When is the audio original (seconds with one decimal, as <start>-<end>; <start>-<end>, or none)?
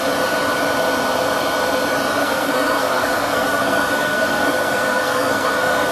0.0-2.2